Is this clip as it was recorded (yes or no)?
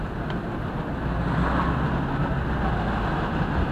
yes